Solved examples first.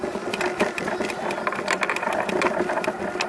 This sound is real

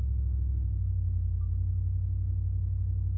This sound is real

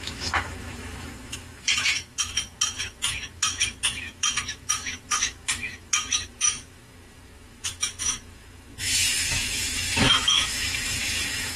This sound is fake